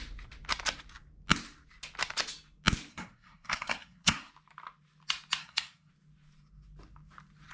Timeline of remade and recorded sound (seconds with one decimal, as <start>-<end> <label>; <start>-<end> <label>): 0.0-2.9 recorded; 2.9-4.3 remade; 4.3-5.4 recorded; 5.4-5.9 remade; 5.9-7.5 recorded